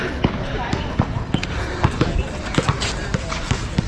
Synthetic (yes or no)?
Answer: no